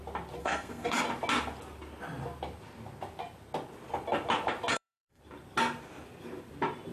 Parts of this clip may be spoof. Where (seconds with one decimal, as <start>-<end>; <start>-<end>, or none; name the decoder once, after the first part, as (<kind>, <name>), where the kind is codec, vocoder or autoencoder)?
0.4-1.0 (codec, SNAC); 4.7-5.2